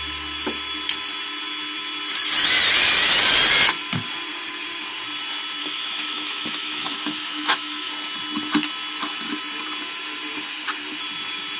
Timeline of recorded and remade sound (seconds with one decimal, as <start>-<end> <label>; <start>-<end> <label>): 0.0-5.6 recorded; 5.6-7.9 remade; 7.9-11.6 recorded